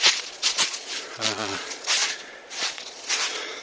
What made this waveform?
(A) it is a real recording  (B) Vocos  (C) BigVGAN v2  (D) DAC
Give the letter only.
B